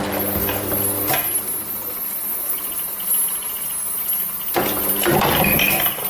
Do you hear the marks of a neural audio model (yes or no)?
no